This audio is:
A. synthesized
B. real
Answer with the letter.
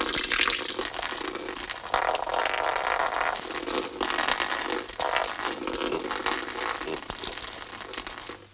B